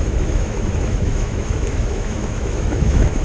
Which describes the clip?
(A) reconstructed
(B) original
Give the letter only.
A